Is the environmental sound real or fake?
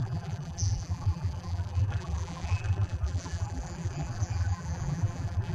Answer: fake